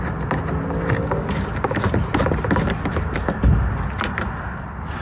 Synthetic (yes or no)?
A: no